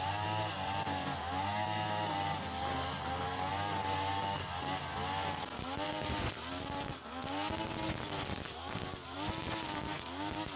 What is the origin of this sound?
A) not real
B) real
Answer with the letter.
B